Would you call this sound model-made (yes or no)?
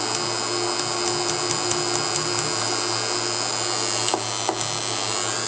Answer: no